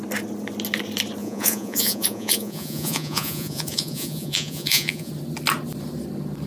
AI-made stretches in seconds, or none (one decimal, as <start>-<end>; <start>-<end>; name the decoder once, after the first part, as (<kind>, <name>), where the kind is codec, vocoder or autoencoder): 1.2-5.1 (vocoder, Vocos)